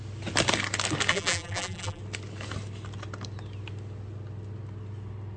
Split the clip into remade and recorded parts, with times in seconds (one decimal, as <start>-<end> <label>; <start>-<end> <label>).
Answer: 0.0-1.1 recorded; 1.1-2.0 remade; 2.0-5.4 recorded